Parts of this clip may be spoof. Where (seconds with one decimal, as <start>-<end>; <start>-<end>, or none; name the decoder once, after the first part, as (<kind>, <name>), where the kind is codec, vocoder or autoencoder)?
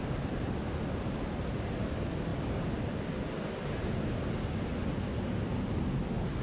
none